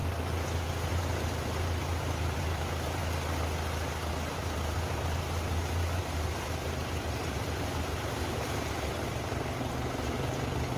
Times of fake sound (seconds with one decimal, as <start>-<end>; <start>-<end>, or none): 0.9-3.0; 4.1-10.8